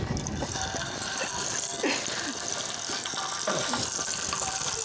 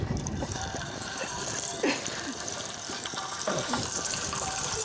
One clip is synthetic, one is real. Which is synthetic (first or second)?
second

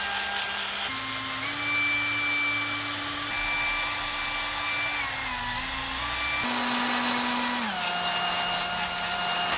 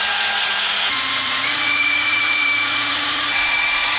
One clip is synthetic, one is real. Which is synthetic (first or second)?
second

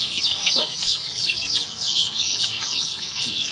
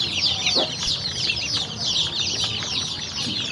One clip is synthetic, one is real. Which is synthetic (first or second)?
first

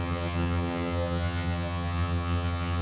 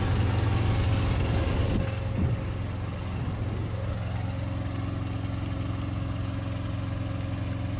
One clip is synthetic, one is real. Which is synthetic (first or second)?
first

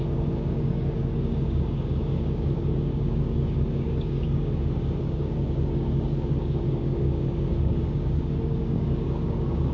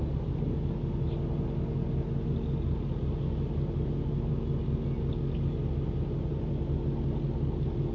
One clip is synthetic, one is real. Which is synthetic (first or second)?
first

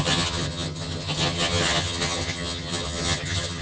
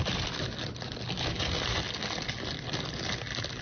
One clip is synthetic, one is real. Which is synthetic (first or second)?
first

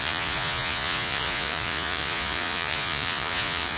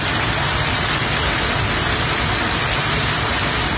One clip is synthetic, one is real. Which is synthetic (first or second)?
first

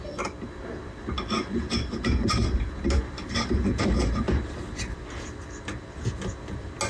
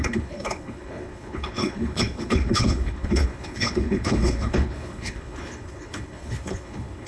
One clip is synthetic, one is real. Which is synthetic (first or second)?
second